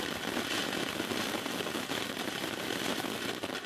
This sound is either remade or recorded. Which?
recorded